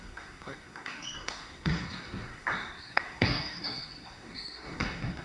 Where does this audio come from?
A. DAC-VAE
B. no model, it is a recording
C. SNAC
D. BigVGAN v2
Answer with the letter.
C